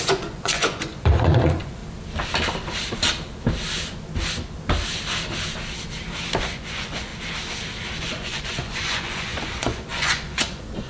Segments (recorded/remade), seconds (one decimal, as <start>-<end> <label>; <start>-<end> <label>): 0.0-1.8 remade; 1.8-6.4 recorded; 6.4-7.1 remade; 7.1-8.0 recorded; 8.0-10.9 remade